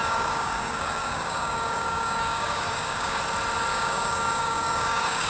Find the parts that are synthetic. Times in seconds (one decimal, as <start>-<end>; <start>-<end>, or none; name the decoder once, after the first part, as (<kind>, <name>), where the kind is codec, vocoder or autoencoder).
0.0-3.2 (codec, DAC); 3.7-5.3